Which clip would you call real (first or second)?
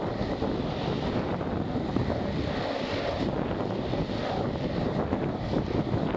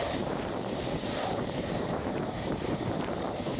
first